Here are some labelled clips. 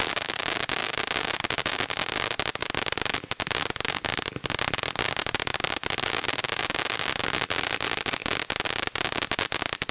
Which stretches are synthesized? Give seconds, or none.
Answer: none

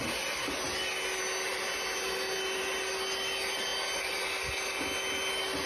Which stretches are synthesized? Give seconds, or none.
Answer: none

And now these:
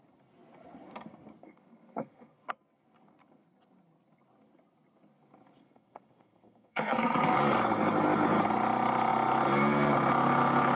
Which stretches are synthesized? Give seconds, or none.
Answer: 1.4-2.5 (codec, SNAC); 5.6-7.4

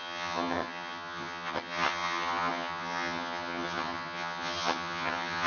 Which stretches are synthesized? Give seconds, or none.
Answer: 0.0-5.5 (vocoder, HiFi-GAN)

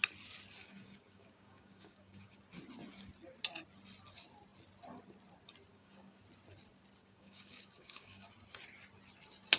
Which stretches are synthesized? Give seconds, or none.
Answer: 0.6-2.4 (codec, DAC); 5.7-6.2; 7.0-8.3